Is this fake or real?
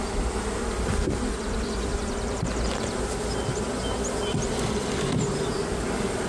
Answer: real